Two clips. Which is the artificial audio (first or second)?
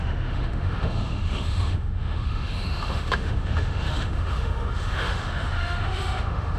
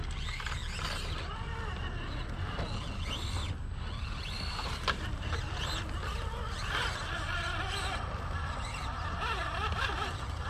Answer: first